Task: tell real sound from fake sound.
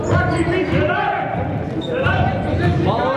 real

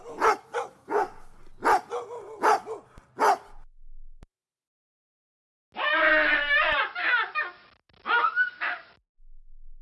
real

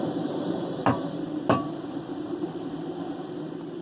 fake